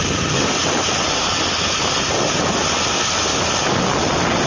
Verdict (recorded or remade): recorded